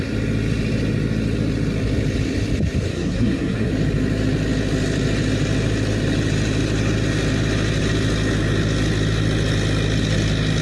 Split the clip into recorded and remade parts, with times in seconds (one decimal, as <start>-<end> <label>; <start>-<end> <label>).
0.0-2.9 recorded; 2.9-3.7 remade; 3.7-10.6 recorded

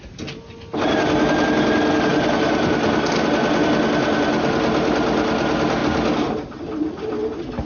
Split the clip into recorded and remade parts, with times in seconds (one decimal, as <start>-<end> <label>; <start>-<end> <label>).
0.0-7.7 recorded

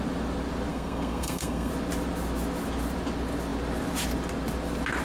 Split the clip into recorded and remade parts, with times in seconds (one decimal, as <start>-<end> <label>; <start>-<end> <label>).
0.0-0.7 recorded; 0.7-1.7 remade; 1.7-5.0 recorded

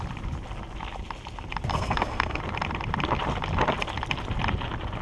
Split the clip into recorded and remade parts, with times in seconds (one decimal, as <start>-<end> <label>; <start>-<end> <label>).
0.0-1.7 recorded; 1.7-2.4 remade; 2.4-5.0 recorded

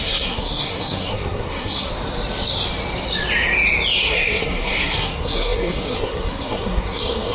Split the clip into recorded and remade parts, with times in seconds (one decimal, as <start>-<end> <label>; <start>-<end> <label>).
0.0-1.9 remade; 1.9-4.0 recorded; 4.0-7.3 remade

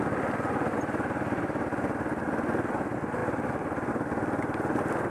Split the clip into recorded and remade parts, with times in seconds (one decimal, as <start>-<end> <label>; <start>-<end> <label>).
0.0-5.1 recorded

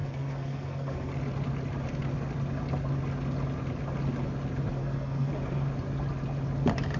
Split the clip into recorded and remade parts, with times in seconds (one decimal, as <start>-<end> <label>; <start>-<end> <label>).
0.0-1.1 remade; 1.1-4.8 recorded; 4.8-5.3 remade; 5.3-7.0 recorded

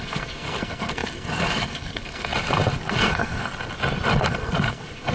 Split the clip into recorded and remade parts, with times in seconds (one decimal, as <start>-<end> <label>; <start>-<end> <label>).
0.0-2.3 remade; 2.3-2.9 recorded; 2.9-3.5 remade; 3.5-4.3 recorded; 4.3-5.1 remade